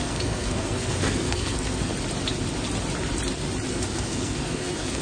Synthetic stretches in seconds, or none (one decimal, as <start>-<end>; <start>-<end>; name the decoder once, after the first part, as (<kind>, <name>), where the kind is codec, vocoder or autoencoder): 0.0-1.9 (codec, SNAC); 3.7-5.0